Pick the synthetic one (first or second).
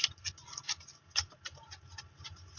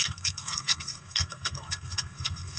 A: second